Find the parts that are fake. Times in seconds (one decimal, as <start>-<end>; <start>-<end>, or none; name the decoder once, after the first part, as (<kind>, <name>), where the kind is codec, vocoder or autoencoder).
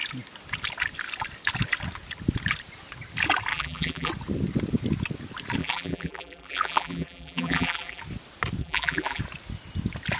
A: 3.5-4.1 (vocoder, BigVGAN v2); 5.6-8.0; 8.6-9.2